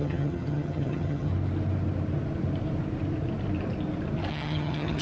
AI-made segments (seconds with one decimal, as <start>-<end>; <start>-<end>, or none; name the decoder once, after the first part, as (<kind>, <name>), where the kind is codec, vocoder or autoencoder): 0.0-1.3 (vocoder, HiFi-GAN); 4.3-5.0